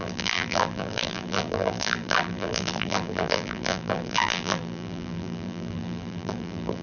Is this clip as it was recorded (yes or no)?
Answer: no